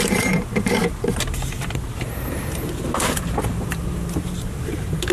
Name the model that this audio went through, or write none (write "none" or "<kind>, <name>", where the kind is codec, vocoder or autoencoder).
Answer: vocoder, BigVGAN v2